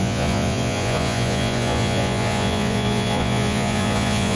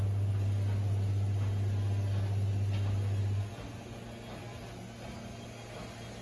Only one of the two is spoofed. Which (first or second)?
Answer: first